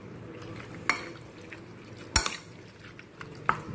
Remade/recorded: recorded